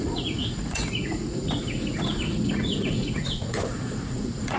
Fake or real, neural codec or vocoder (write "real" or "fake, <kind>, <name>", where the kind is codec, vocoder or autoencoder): fake, vocoder, Vocos